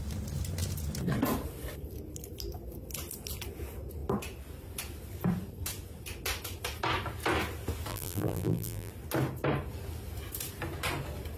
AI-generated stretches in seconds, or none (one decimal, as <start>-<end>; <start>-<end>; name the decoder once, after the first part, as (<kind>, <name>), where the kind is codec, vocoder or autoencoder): 7.9-8.9 (vocoder, BigVGAN v2)